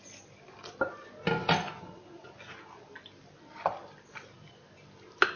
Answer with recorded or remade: recorded